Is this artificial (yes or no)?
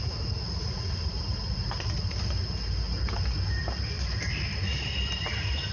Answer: no